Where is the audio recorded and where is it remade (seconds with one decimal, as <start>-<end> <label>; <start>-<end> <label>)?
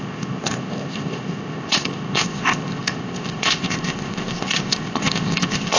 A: 0.0-5.8 remade